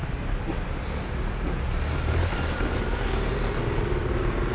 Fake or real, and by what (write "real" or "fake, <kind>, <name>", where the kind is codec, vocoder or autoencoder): real